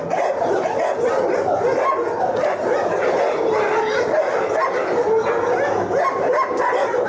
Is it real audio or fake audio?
real